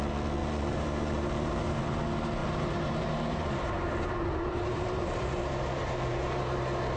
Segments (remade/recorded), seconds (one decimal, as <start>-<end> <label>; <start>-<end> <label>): 0.0-0.4 recorded; 0.4-1.8 remade; 1.8-2.4 recorded; 2.4-6.6 remade; 6.6-7.0 recorded